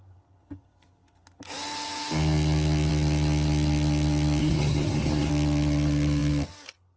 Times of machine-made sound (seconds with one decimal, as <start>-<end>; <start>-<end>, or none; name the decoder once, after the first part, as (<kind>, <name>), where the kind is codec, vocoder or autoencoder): 4.4-5.3 (codec, SNAC)